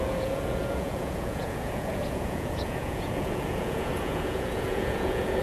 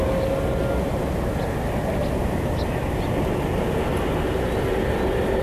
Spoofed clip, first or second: first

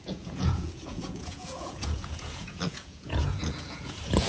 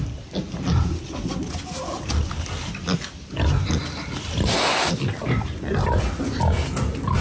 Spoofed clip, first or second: first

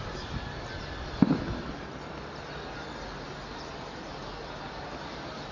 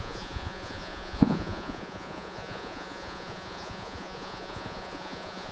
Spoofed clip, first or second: second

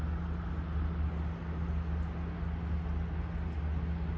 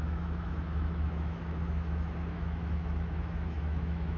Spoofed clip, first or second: second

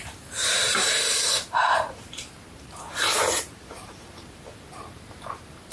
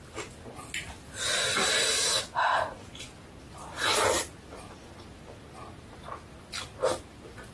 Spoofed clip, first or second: first